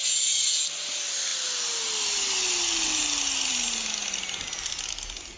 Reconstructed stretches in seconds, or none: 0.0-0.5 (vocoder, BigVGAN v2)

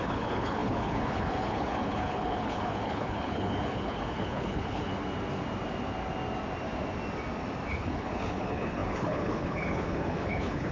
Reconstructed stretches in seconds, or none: 0.0-4.9 (codec, HILCodec); 7.7-10.7

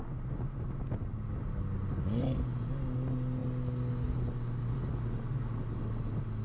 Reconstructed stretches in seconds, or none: none

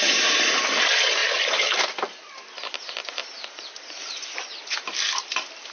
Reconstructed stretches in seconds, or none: none

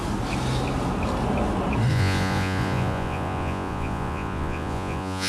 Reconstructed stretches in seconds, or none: 1.9-5.3 (vocoder, Vocos)